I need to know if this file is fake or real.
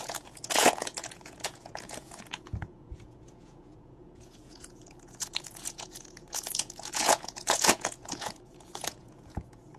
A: fake